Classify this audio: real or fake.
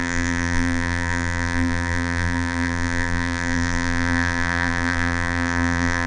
fake